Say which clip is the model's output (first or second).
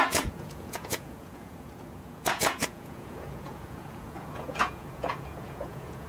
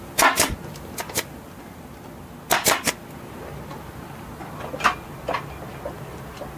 first